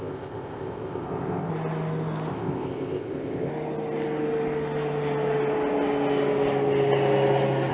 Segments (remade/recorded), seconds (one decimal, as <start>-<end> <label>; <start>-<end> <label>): 0.0-1.5 remade; 1.5-2.3 recorded; 2.3-3.5 remade; 3.5-7.7 recorded